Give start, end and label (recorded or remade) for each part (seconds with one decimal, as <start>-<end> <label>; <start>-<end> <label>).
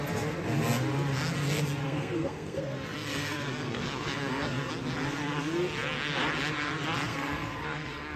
0.0-1.8 recorded; 1.8-4.7 remade; 4.7-7.1 recorded; 7.1-8.2 remade